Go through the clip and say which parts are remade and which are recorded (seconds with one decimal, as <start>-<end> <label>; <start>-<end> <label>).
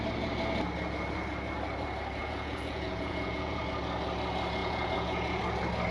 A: 0.0-2.2 recorded; 2.2-3.6 remade; 3.6-4.6 recorded; 4.6-5.4 remade; 5.4-5.9 recorded